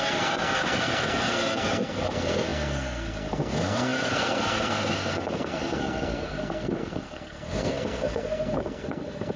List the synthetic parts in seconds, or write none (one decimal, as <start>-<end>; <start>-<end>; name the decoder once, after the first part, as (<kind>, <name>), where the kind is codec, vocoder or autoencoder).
0.0-9.4 (codec, SNAC)